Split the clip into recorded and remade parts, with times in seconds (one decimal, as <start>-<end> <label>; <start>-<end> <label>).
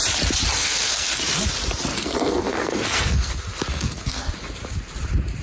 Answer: 0.0-0.6 recorded; 0.6-1.2 remade; 1.2-1.9 recorded; 1.9-3.3 remade; 3.3-3.7 recorded; 3.7-4.3 remade; 4.3-5.4 recorded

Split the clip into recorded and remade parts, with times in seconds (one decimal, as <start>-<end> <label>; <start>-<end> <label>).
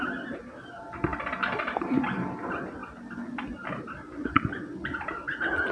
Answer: 0.0-5.7 recorded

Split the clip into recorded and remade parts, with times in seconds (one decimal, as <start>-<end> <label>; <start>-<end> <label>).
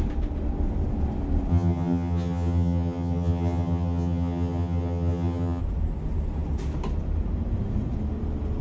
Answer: 0.0-1.5 recorded; 1.5-5.6 remade; 5.6-8.6 recorded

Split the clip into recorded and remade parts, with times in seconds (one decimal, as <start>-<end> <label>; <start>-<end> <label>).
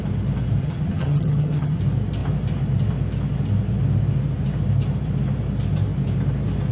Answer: 0.0-0.6 recorded; 0.6-1.8 remade; 1.8-6.7 recorded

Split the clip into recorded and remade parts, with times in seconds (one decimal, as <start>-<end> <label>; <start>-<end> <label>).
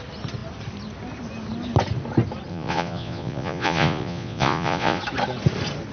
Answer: 0.0-2.5 recorded; 2.5-5.0 remade; 5.0-5.9 recorded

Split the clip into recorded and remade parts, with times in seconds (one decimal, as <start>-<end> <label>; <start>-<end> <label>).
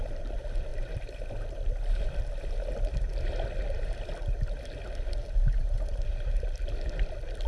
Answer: 0.0-0.7 recorded; 0.7-3.9 remade; 3.9-7.5 recorded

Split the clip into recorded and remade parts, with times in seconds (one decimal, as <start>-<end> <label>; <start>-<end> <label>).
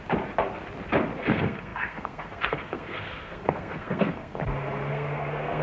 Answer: 0.0-1.2 recorded; 1.2-4.4 remade; 4.4-4.9 recorded; 4.9-5.6 remade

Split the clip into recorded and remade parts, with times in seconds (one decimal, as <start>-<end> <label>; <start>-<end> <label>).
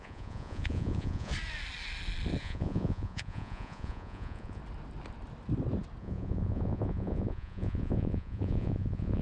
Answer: 0.0-1.3 remade; 1.3-2.4 recorded; 2.4-4.6 remade; 4.6-6.0 recorded; 6.0-9.2 remade